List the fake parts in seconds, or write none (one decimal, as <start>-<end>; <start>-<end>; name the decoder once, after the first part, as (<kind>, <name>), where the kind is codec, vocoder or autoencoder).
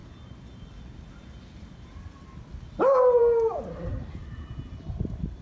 none